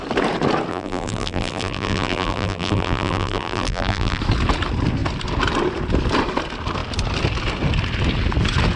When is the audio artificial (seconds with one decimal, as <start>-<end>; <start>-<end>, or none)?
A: 0.7-4.2